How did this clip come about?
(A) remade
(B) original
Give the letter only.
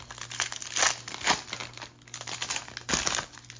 B